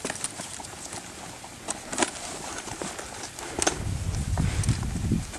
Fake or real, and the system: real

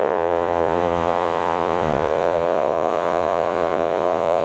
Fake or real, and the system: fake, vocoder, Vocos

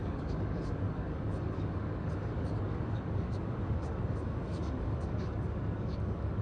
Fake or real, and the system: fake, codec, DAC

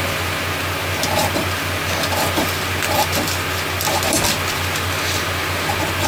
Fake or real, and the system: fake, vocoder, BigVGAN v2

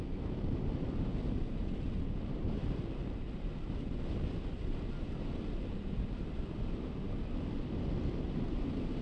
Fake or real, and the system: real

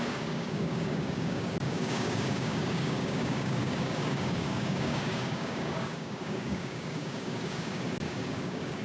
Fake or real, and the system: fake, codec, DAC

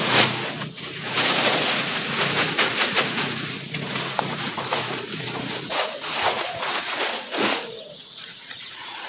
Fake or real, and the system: fake, vocoder, Vocos